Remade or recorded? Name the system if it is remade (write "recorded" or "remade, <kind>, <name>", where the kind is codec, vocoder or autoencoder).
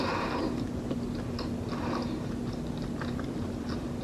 recorded